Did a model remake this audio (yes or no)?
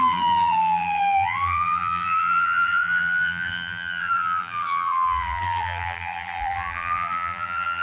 yes